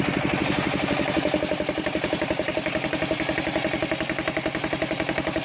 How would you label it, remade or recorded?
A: recorded